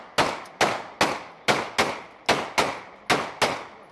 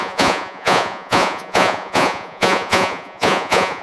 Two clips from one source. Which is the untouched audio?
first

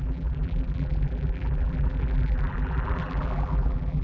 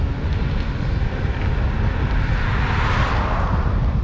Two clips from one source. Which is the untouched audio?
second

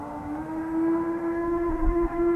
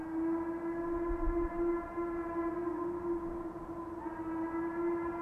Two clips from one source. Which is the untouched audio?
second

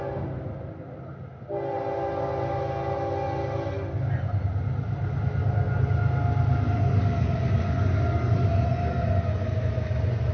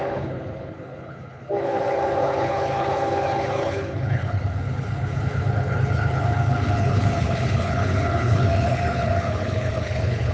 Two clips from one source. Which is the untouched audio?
first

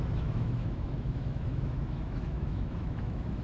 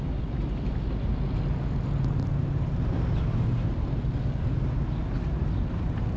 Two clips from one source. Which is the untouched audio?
second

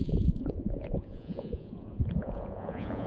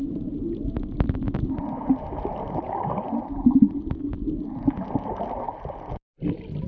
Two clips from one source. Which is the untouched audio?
second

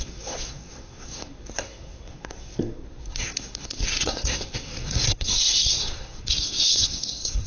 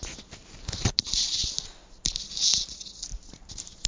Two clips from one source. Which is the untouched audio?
second